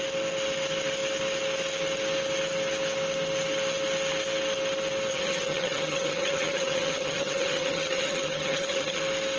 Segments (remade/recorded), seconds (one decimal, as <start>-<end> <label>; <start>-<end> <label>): 0.0-5.1 recorded; 5.1-9.0 remade; 9.0-9.4 recorded